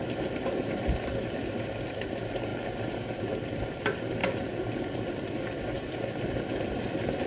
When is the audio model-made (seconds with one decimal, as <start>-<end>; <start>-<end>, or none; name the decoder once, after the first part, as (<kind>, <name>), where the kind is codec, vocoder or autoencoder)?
0.0-4.2 (vocoder, BigVGAN v2); 4.7-7.3

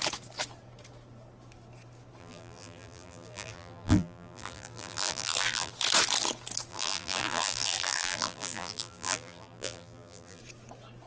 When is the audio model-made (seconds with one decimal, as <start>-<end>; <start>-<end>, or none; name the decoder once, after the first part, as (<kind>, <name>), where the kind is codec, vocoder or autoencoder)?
2.2-5.7 (vocoder, BigVGAN v2); 6.7-10.4

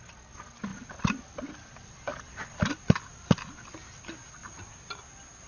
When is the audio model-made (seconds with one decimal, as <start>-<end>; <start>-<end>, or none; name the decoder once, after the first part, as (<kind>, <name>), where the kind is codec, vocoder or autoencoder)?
0.7-4.0 (vocoder, BigVGAN v2); 4.4-5.0

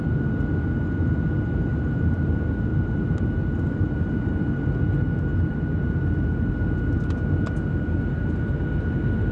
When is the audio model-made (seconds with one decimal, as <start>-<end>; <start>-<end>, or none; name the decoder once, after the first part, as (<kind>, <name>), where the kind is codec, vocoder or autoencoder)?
1.7-2.3 (vocoder, BigVGAN v2); 2.7-4.6; 5.3-6.5